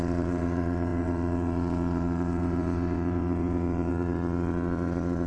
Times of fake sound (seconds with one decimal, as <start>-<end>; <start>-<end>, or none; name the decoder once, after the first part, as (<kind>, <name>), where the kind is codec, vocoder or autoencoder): 0.0-5.3 (vocoder, Vocos)